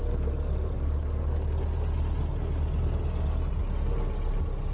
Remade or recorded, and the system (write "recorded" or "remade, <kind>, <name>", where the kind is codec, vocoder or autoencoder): recorded